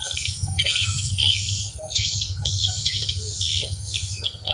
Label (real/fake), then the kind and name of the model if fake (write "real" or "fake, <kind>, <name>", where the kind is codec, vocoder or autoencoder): fake, codec, SNAC